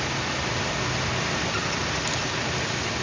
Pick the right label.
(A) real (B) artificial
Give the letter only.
A